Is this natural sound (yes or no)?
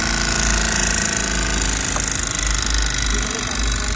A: yes